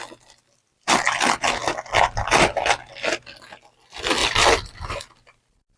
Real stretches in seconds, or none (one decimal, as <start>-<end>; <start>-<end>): 0.0-1.7; 3.1-4.2